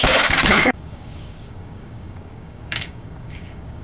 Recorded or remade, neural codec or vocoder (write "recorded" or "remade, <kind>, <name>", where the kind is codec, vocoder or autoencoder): remade, codec, DAC